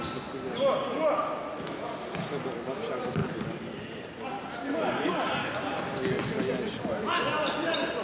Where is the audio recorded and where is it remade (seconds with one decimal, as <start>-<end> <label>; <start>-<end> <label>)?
0.0-3.2 recorded; 3.2-4.3 remade; 4.3-8.0 recorded